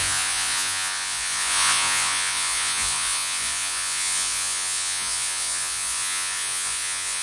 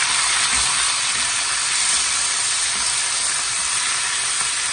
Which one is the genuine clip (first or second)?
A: second